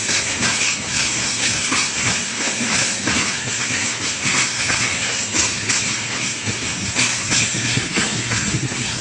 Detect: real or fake fake